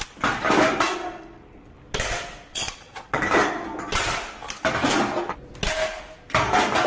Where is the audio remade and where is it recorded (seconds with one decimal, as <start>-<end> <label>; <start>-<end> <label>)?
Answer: 0.0-2.5 recorded; 2.5-3.2 remade; 3.2-6.9 recorded